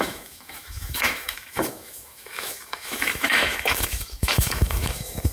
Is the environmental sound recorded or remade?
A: remade